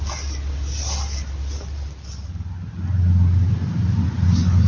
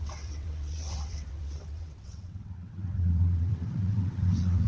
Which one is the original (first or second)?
first